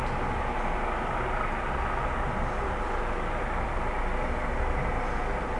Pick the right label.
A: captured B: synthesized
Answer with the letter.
A